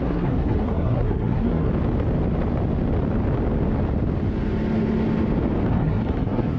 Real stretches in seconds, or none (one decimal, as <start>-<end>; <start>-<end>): 1.7-5.7